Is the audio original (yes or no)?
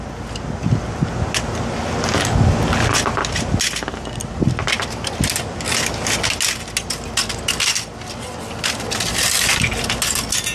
yes